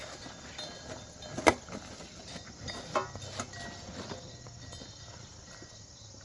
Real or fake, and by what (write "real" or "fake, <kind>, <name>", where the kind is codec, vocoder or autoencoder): real